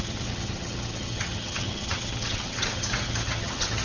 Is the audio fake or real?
fake